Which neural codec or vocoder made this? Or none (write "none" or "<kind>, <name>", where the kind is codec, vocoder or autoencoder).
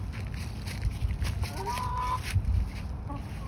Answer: none